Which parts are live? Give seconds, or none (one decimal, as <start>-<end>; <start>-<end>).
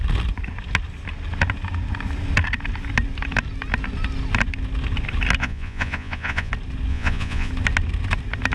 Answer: 0.0-5.4; 6.5-6.9; 7.5-8.5